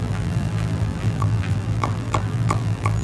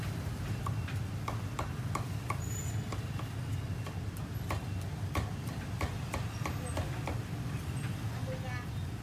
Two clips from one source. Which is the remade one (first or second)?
first